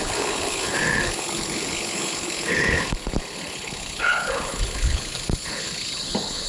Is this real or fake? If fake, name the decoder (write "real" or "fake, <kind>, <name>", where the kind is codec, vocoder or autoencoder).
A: fake, codec, HILCodec